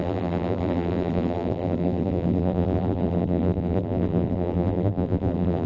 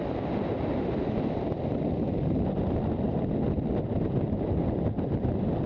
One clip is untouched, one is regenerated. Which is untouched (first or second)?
second